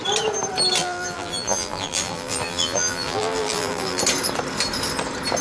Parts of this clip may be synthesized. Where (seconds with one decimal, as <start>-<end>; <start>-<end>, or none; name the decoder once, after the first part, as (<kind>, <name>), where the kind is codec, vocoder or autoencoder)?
0.8-4.0 (vocoder, BigVGAN v2)

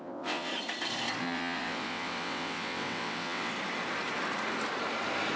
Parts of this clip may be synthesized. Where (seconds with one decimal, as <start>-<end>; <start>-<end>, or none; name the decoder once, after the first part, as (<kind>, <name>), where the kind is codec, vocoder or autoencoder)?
0.0-0.5 (vocoder, WaveNeXt); 1.2-3.5

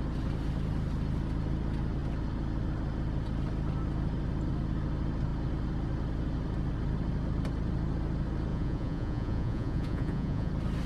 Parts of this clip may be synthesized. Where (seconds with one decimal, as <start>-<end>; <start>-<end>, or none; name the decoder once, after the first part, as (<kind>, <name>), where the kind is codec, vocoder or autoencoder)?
8.5-10.5 (vocoder, Vocos)

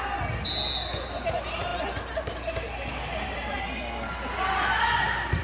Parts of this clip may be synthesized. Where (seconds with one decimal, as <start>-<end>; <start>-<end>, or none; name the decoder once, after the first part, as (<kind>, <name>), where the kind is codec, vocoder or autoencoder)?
none

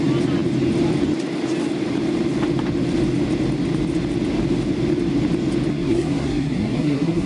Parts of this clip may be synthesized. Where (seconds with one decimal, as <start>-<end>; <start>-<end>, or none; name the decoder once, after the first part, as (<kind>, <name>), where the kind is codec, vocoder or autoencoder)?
5.7-7.3 (codec, SNAC)